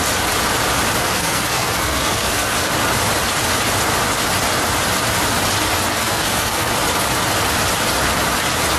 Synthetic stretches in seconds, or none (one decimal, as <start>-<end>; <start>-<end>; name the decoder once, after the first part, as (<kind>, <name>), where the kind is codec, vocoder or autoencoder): 1.0-2.7 (codec, SNAC); 5.9-6.7